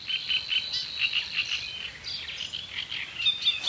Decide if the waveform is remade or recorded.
recorded